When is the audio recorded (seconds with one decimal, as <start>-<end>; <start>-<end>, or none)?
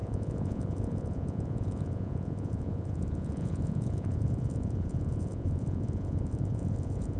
none